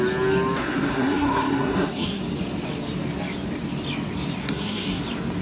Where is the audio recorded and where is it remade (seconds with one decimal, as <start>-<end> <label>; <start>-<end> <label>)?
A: 0.0-0.6 recorded; 0.6-2.2 remade; 2.2-4.4 recorded; 4.4-5.0 remade; 5.0-5.4 recorded